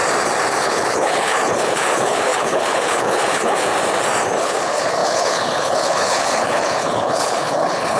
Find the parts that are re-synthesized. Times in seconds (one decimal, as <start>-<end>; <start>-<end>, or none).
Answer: 0.6-3.7; 4.4-8.0